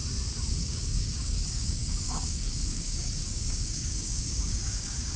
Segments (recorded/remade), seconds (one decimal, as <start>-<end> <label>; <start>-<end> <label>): 0.0-0.6 recorded; 0.6-5.2 remade